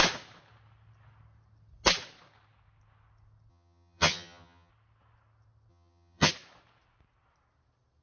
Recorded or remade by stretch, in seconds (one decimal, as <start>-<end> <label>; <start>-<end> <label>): 0.0-3.5 recorded; 3.5-4.7 remade; 4.7-5.7 recorded; 5.7-6.3 remade; 6.3-8.0 recorded